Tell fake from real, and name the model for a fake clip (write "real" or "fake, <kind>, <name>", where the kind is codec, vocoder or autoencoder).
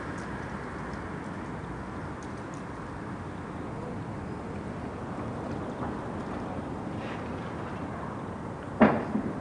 real